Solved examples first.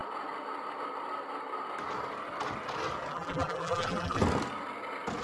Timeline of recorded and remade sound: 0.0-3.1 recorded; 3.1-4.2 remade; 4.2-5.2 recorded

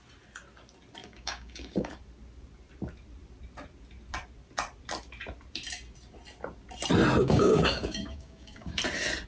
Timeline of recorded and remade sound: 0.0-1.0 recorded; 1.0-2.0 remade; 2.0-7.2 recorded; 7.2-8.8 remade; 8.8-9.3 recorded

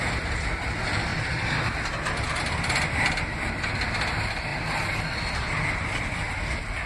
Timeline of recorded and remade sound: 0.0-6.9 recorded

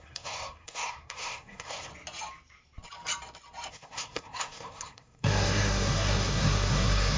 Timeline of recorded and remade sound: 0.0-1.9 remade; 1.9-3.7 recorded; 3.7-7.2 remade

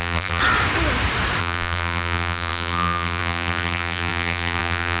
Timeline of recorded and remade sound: 0.0-0.4 remade; 0.4-1.4 recorded; 1.4-5.0 remade

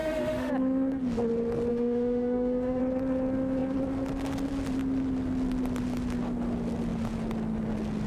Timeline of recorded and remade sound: 0.0-0.5 remade; 0.5-1.7 recorded; 1.7-2.8 remade; 2.8-8.1 recorded